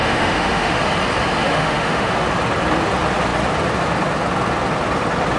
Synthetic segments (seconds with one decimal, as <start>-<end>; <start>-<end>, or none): 0.0-0.8; 1.5-2.1